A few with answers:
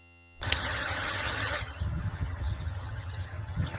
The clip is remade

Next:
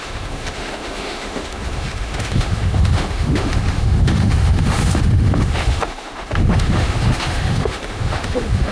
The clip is remade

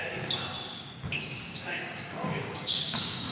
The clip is remade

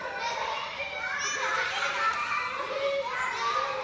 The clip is recorded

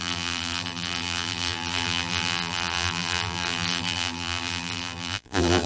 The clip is remade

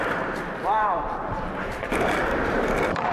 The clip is remade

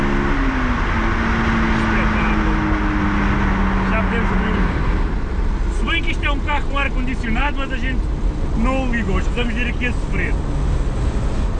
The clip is recorded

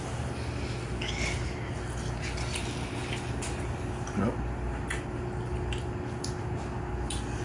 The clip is recorded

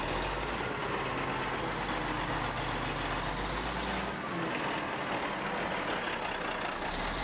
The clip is recorded